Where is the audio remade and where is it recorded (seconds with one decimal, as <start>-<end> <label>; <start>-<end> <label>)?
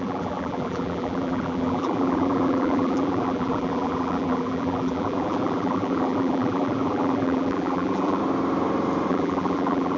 0.0-8.2 remade; 8.2-9.1 recorded; 9.1-10.0 remade